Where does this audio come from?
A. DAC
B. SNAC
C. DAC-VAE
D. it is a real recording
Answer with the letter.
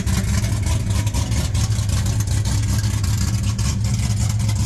D